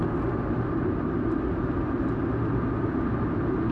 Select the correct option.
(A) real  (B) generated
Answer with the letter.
A